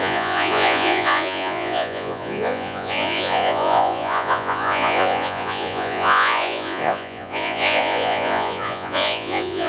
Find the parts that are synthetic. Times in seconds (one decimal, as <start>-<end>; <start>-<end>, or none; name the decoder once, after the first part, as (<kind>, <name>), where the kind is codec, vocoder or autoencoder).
0.0-9.7 (vocoder, Vocos)